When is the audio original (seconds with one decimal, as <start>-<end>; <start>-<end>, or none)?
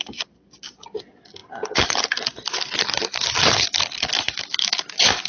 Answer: 0.0-4.5